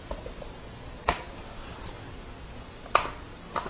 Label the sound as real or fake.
real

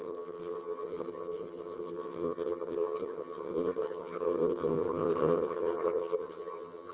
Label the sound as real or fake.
fake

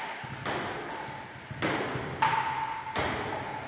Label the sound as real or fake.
real